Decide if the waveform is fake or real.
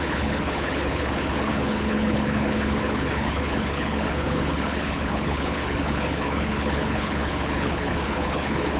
fake